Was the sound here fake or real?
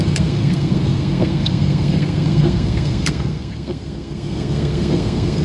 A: fake